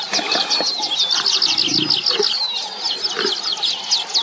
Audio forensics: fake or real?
real